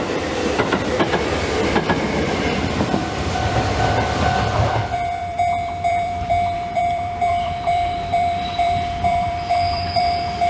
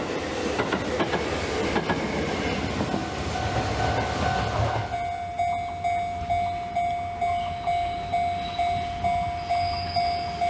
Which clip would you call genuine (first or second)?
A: second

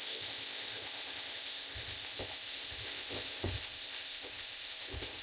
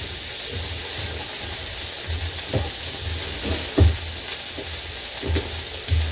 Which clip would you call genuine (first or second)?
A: second